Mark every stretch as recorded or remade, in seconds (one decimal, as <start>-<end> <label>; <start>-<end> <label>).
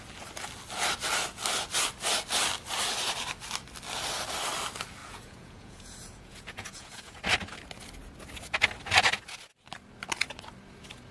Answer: 0.0-5.0 recorded; 5.0-7.2 remade; 7.2-11.1 recorded